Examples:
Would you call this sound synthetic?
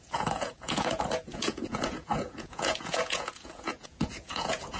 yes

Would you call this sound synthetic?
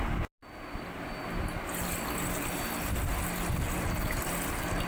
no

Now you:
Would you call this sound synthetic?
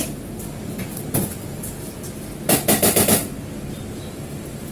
no